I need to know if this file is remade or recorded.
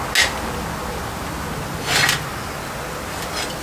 recorded